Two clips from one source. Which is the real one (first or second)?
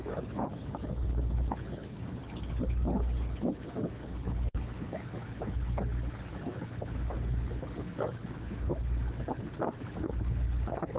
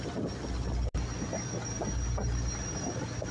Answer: second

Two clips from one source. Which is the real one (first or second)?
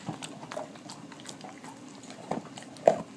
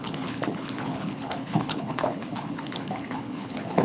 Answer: first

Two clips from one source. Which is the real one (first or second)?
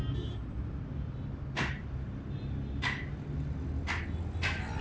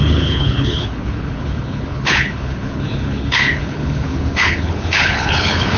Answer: first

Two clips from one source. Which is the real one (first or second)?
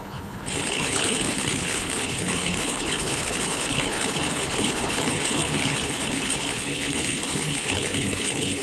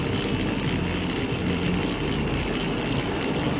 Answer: second